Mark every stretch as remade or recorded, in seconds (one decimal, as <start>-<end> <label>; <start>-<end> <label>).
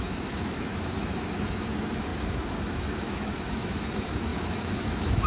0.0-5.3 remade